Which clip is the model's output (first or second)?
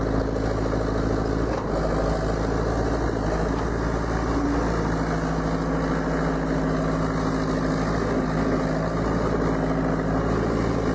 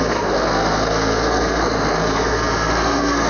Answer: second